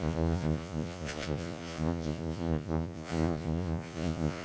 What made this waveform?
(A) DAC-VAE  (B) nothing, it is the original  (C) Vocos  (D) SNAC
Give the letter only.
C